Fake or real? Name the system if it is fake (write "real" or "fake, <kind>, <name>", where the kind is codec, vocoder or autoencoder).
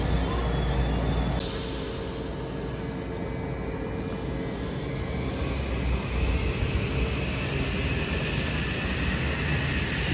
real